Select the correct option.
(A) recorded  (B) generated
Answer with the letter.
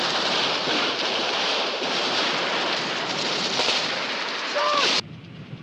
B